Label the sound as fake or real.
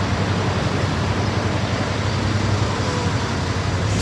real